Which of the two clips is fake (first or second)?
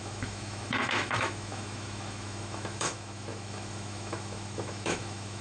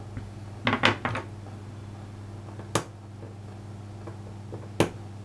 first